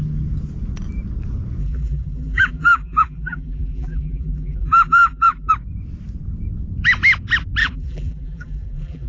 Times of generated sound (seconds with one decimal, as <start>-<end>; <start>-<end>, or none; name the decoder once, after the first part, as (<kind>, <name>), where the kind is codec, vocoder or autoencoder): 1.6-5.5 (vocoder, BigVGAN v2); 7.6-9.1